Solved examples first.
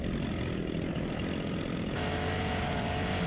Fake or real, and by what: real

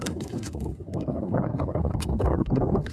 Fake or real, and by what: fake, codec, SNAC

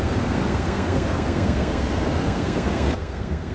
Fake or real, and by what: fake, codec, SNAC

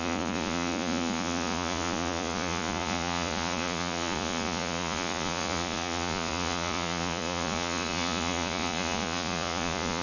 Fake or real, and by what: fake, vocoder, Vocos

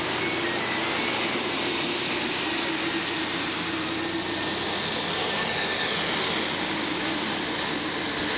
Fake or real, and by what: real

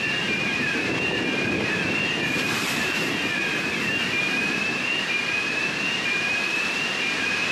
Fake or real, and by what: fake, vocoder, BigVGAN v2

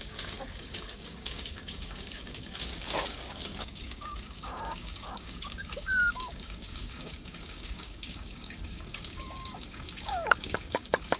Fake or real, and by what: fake, codec, DAC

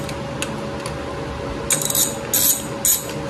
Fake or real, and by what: real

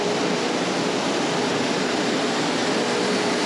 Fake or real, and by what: fake, vocoder, BigVGAN v2